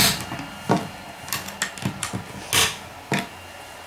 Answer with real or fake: real